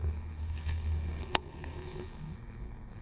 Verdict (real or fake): fake